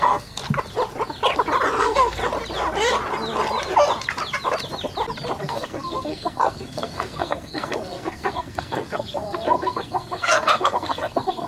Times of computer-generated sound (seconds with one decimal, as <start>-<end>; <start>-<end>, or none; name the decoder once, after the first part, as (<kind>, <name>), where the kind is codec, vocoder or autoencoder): 0.0-0.4 (codec, SNAC); 1.8-2.2; 5.4-11.5